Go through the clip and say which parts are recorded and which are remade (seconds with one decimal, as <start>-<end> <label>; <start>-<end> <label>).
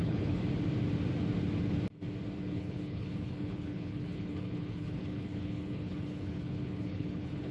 0.0-0.4 remade; 0.4-2.4 recorded; 2.4-7.5 remade